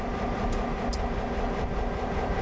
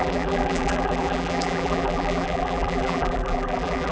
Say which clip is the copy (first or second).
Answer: second